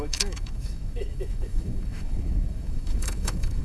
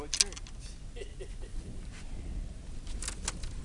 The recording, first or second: second